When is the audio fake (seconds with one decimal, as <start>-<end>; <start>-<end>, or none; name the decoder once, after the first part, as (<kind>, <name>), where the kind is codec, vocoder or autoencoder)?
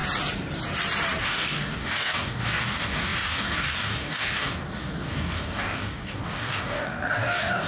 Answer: 1.2-7.7 (codec, DAC)